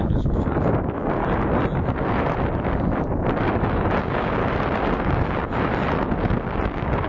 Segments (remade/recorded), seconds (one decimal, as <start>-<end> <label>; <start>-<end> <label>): 0.0-1.2 remade; 1.2-4.0 recorded; 4.0-4.4 remade; 4.4-6.3 recorded; 6.3-7.1 remade